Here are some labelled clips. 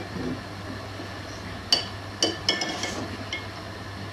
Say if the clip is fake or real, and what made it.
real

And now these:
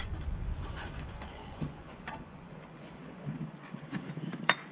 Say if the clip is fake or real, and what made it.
fake, vocoder, Vocos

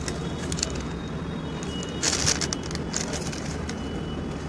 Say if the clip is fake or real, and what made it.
real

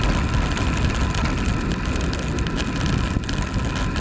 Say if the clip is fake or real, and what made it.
real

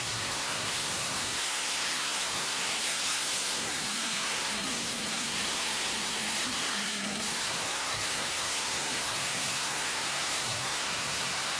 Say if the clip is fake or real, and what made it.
fake, codec, SNAC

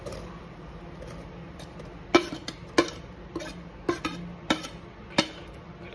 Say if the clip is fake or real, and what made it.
real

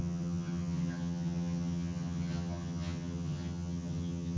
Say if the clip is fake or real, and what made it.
fake, vocoder, HiFi-GAN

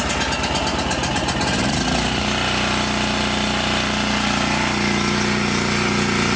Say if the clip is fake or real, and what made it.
real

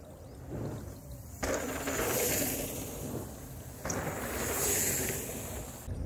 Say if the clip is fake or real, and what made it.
real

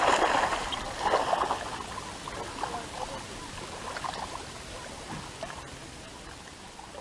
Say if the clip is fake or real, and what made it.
real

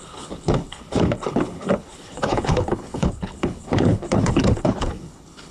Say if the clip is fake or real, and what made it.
fake, codec, HILCodec